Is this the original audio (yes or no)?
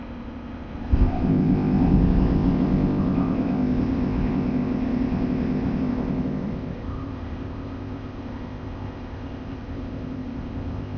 no